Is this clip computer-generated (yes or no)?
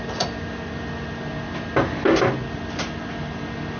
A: no